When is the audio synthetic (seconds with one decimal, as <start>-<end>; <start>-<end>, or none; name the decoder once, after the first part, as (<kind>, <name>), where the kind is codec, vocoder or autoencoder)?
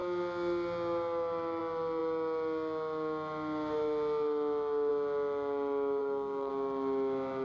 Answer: 6.0-6.5 (codec, SNAC)